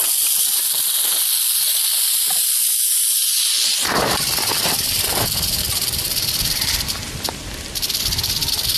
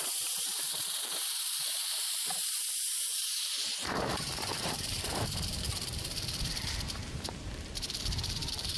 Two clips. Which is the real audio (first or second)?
first